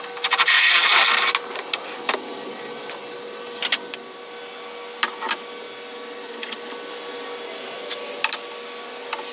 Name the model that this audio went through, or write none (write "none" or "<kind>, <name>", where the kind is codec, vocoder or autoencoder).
none